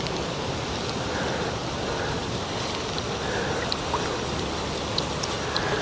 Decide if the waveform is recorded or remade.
recorded